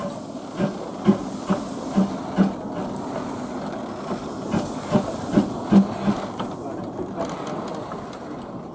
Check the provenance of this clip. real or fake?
real